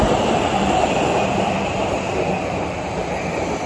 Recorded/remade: remade